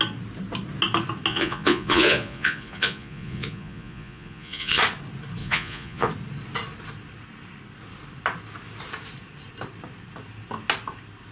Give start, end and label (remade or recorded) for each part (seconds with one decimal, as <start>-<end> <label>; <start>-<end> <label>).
0.0-1.3 recorded; 1.3-4.8 remade; 4.8-5.4 recorded; 5.4-6.1 remade; 6.1-11.3 recorded